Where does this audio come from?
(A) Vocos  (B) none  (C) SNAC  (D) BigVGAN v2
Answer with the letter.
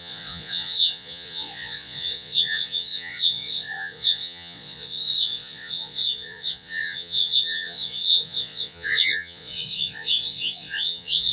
A